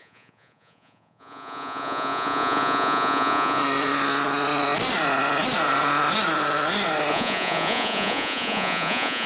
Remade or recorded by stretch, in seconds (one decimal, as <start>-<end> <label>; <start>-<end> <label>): 0.0-3.6 remade; 3.6-7.1 recorded; 7.1-9.3 remade